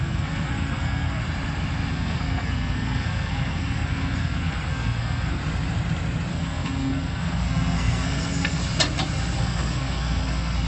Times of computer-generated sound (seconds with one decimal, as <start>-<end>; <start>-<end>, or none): 0.0-1.2; 1.9-5.4; 6.3-8.6; 9.4-10.7